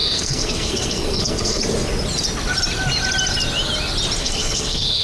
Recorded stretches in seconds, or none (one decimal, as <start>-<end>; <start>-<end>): 1.6-4.2